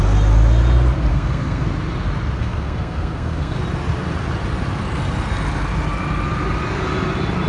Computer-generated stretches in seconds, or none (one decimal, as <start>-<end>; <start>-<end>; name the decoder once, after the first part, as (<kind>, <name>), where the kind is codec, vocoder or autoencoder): 1.1-1.7 (codec, SNAC); 2.4-3.6